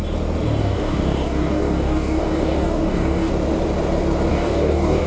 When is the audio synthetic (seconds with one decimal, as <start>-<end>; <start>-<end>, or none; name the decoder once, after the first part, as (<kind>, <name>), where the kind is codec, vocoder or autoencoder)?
0.6-3.3 (codec, DAC); 4.3-5.1